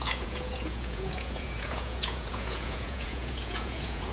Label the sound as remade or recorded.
remade